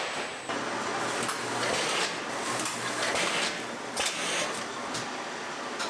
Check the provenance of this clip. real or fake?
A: real